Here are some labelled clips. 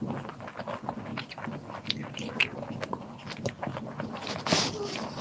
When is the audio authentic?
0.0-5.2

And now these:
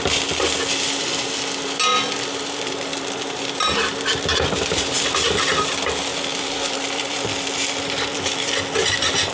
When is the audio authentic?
0.0-1.9; 4.8-6.1; 8.5-9.3